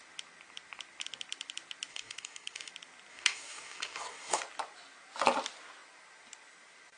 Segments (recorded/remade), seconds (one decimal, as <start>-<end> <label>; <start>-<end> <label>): 0.0-1.9 recorded; 1.9-2.7 remade; 2.7-3.1 recorded; 3.1-4.4 remade; 4.4-7.0 recorded